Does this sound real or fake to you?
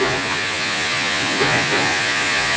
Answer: fake